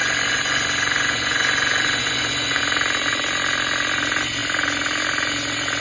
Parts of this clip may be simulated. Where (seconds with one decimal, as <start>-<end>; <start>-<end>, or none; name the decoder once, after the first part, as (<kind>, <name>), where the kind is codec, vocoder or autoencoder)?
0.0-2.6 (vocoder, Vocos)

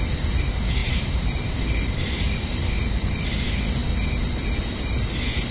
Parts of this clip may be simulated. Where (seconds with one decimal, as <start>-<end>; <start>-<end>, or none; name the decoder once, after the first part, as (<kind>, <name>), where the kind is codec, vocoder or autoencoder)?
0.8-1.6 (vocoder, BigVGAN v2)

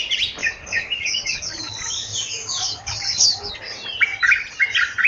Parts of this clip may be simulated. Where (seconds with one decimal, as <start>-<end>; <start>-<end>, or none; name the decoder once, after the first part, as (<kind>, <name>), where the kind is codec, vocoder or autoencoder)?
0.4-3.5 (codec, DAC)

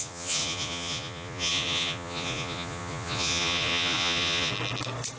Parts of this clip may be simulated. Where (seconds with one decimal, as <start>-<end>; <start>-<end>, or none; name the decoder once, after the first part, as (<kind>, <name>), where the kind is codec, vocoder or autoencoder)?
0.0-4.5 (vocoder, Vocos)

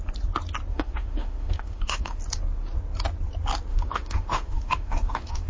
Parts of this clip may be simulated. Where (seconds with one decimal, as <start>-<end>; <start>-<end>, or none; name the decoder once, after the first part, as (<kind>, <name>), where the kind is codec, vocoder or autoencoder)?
0.7-2.2 (autoencoder, DAC-VAE); 3.7-5.5